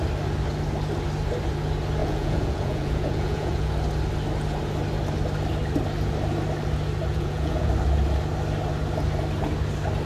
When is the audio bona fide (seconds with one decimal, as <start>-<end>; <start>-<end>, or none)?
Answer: 0.0-2.0; 3.7-7.1; 7.7-10.1